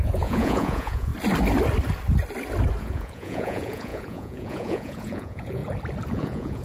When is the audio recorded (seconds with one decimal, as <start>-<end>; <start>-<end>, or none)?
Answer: 1.1-2.8; 5.6-6.1